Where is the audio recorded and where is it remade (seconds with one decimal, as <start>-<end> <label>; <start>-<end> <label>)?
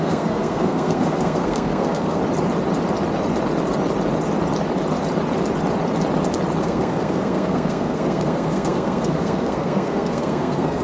0.0-2.2 remade; 2.2-6.6 recorded; 6.6-10.8 remade